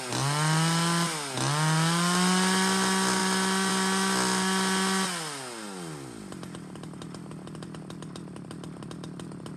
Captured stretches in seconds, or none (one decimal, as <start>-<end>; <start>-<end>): 0.0-9.6